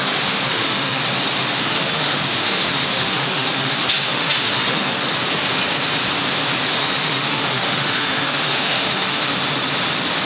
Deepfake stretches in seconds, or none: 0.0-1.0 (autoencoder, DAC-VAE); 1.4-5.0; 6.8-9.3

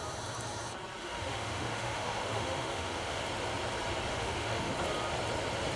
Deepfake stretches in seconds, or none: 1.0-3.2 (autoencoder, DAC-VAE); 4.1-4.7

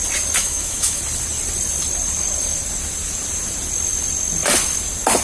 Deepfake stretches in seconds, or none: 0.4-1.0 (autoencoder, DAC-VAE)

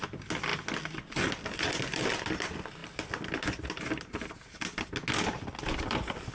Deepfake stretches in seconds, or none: none

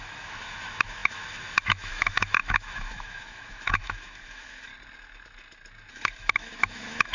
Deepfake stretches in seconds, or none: 0.0-4.7 (autoencoder, DAC-VAE); 5.9-7.1

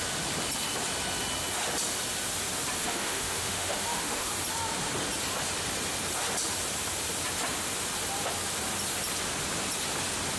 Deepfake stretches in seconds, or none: 2.8-4.3 (autoencoder, DAC-VAE)

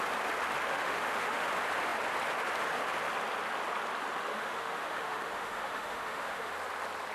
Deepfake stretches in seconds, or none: 0.7-1.5 (autoencoder, DAC-VAE); 4.3-6.5

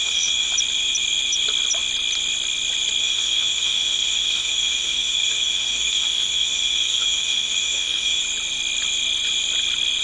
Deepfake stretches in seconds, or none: 0.0-0.5 (autoencoder, DAC-VAE); 3.0-8.2